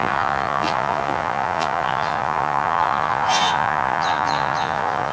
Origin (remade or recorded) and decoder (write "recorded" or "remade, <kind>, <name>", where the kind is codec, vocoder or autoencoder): remade, vocoder, Vocos